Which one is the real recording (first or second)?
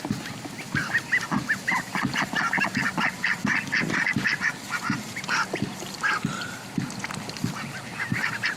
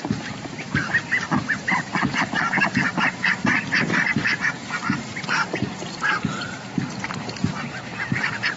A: first